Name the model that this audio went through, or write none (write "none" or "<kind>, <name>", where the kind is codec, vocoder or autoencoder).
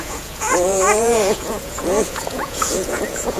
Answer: vocoder, Vocos